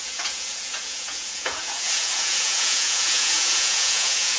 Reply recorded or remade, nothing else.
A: remade